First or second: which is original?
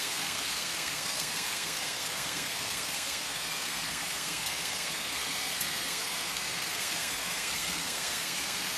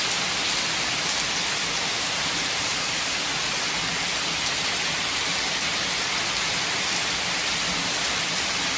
second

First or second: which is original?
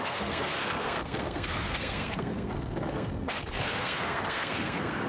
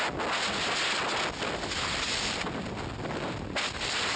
second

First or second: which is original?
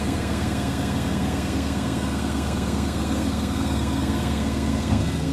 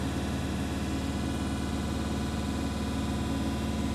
second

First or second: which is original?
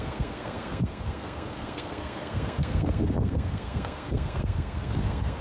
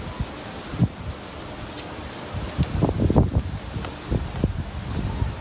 second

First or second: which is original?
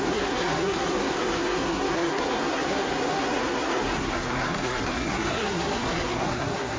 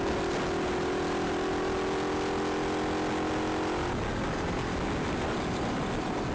second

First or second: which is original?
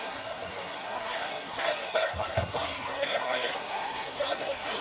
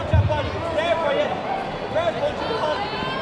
second